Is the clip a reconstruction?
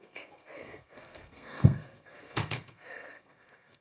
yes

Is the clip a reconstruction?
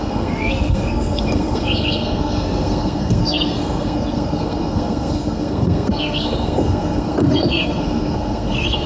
yes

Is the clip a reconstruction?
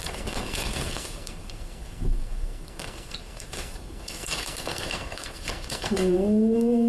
yes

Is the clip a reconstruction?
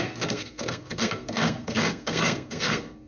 yes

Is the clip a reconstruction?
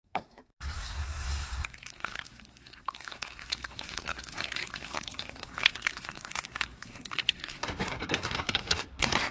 yes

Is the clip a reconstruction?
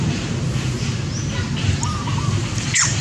no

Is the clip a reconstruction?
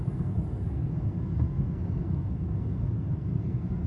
yes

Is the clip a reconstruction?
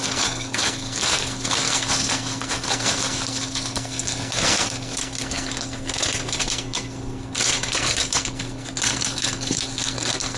yes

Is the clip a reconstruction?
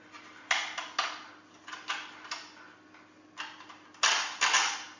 no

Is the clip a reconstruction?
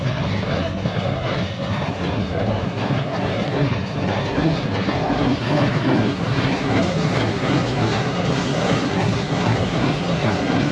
yes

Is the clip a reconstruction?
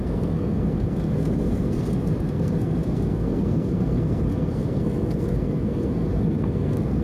yes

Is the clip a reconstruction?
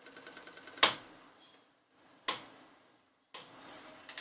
no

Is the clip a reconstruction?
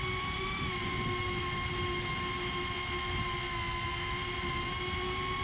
no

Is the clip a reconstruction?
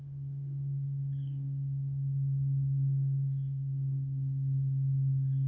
yes